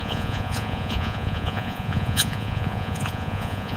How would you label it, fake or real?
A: fake